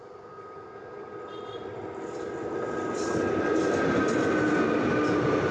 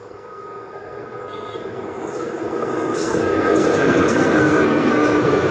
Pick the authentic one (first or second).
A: first